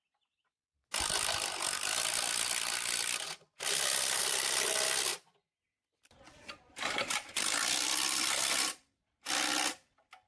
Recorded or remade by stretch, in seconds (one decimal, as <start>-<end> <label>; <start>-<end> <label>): 0.0-10.3 recorded